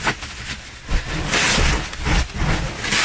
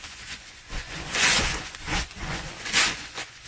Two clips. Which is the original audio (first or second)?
first